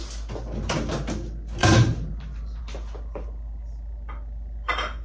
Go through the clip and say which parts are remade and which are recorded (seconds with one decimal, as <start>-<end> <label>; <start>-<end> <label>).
0.0-1.6 recorded; 1.6-2.6 remade; 2.6-5.0 recorded